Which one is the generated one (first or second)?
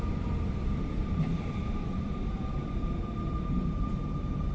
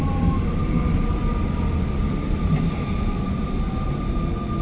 first